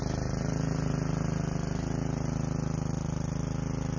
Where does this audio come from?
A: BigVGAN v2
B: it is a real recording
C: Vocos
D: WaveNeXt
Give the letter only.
B